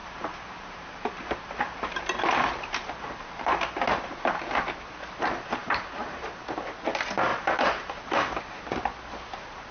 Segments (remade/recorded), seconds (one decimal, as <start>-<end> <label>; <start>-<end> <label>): 0.0-3.8 remade; 3.8-5.6 recorded; 5.6-6.2 remade; 6.2-7.3 recorded; 7.3-8.4 remade; 8.4-9.7 recorded